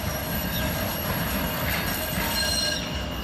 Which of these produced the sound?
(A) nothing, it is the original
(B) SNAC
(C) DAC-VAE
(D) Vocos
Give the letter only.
A